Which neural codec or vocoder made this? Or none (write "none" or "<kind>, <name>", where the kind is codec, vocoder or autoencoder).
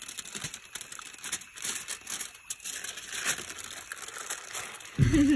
none